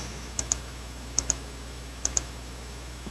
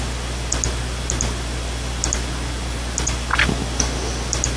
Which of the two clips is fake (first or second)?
first